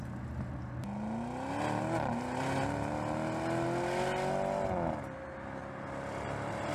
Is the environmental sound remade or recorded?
recorded